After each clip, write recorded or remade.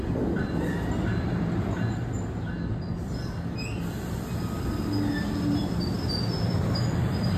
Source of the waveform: recorded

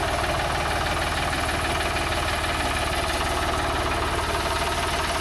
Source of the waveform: recorded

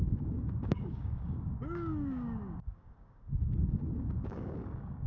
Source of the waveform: remade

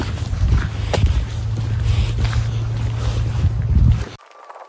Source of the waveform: recorded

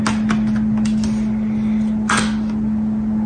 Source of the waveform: recorded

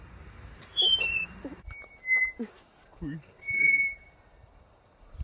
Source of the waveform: remade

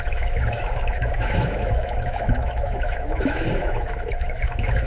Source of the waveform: remade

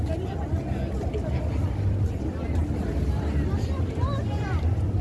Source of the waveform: recorded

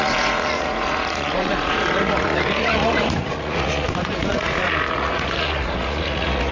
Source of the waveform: remade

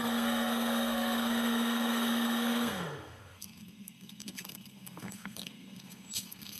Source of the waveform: remade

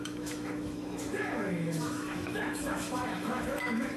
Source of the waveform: remade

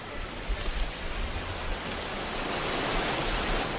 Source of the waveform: recorded